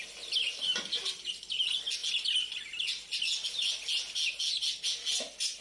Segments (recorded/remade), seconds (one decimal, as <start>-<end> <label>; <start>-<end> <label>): 0.0-5.6 recorded